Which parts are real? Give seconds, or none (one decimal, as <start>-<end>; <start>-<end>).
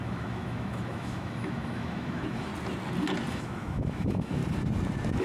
2.5-3.3; 4.4-5.2